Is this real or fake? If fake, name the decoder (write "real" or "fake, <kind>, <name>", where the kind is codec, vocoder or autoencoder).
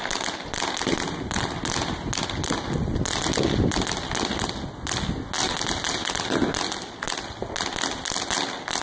real